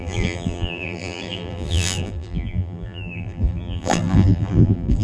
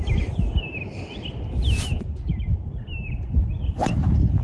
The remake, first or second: first